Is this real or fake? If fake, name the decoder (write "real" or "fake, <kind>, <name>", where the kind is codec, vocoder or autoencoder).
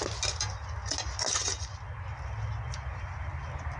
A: real